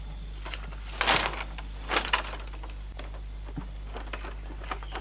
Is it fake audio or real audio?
real